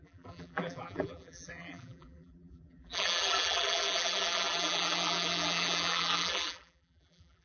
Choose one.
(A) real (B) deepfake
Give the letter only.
B